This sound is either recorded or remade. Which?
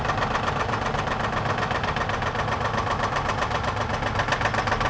recorded